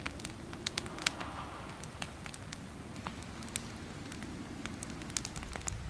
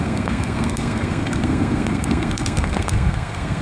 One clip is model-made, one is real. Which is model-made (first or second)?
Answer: second